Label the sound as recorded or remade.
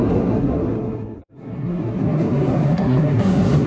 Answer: remade